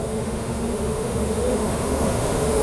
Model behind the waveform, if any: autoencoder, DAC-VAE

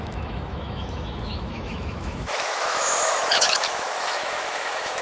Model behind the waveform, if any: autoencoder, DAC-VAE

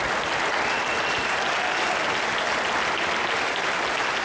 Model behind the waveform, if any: none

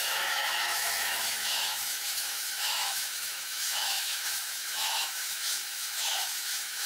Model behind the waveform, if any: autoencoder, DAC-VAE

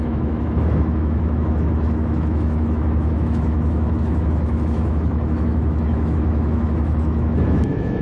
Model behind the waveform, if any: autoencoder, DAC-VAE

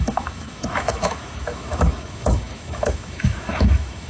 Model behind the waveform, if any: autoencoder, DAC-VAE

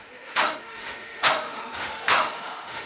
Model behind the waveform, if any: autoencoder, DAC-VAE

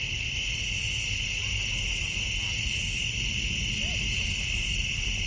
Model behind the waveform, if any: none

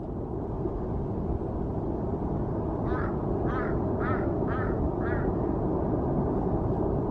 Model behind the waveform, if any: none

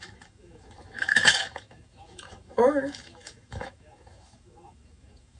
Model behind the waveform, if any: autoencoder, DAC-VAE